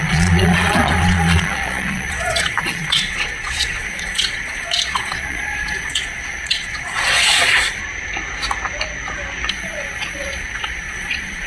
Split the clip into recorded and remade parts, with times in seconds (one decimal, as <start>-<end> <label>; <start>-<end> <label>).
0.0-7.8 remade; 7.8-9.5 recorded; 9.5-11.5 remade